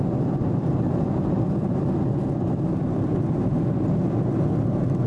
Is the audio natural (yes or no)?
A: yes